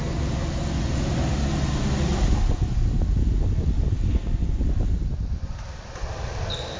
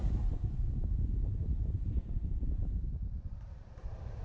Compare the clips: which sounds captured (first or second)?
first